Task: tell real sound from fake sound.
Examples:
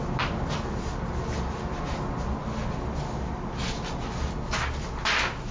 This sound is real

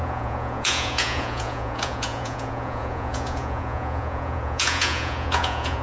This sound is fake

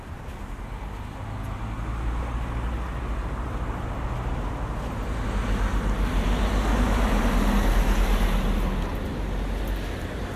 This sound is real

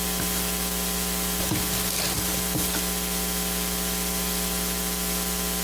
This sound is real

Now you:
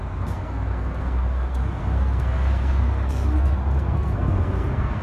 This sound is fake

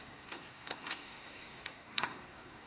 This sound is fake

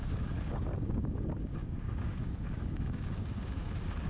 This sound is fake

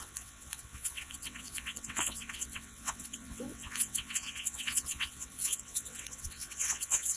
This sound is fake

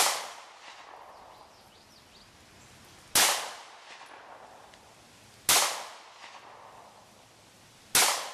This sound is real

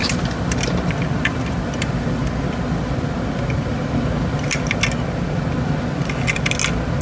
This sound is real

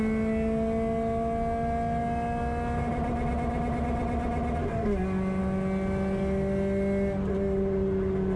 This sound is real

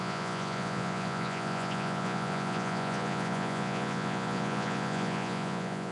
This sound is fake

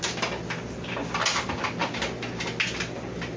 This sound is real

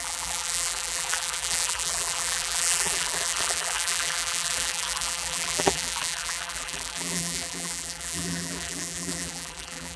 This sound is fake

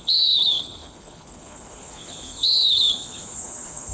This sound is fake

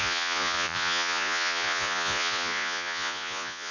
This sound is fake